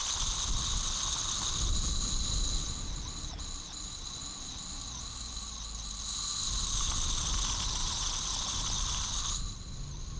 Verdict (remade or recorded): recorded